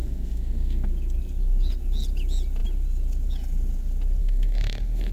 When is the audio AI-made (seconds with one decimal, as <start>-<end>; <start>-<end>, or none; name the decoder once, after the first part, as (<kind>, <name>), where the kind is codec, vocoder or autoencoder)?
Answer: 0.0-0.9 (codec, SNAC); 4.2-5.1